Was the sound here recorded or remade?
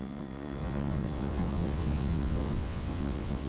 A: remade